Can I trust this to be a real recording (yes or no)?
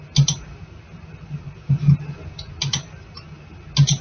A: yes